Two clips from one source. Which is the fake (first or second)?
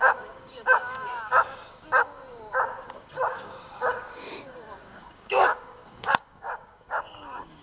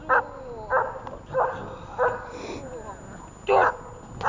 first